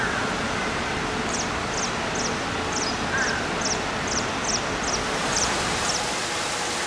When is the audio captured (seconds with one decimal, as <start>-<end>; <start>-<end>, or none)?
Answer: 0.0-4.4; 5.6-6.9